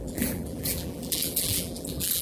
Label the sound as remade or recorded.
remade